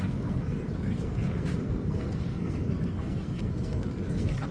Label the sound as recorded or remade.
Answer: remade